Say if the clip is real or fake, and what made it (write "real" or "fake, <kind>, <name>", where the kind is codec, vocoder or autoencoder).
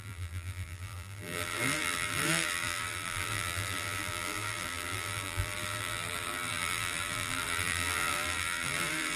fake, vocoder, BigVGAN v2